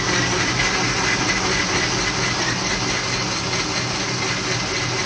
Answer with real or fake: real